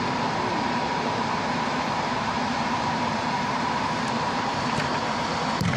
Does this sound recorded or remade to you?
remade